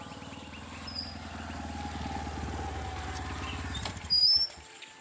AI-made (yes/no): no